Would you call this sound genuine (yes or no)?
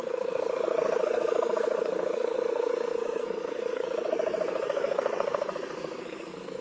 no